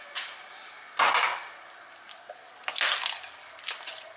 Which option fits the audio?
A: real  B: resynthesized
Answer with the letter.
A